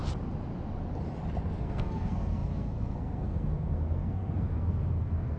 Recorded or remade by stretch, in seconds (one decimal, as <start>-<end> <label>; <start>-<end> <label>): 0.0-1.6 recorded; 1.6-5.4 remade